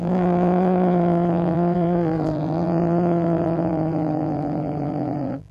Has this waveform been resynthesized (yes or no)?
yes